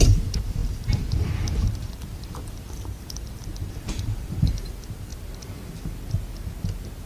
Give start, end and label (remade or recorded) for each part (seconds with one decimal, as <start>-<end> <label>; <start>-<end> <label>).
0.0-5.1 remade; 5.1-7.1 recorded